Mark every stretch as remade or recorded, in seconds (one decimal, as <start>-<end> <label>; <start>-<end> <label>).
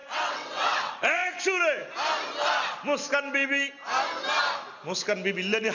0.0-1.4 remade; 1.4-5.7 recorded